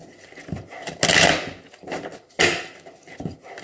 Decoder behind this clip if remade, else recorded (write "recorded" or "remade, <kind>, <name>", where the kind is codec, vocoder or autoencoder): recorded